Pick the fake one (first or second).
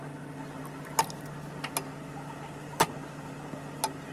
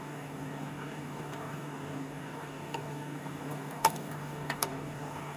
second